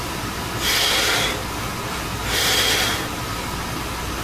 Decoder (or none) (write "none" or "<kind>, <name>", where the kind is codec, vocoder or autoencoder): none